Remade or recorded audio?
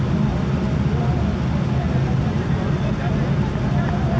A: recorded